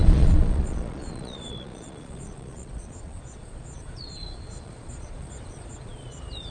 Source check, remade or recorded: remade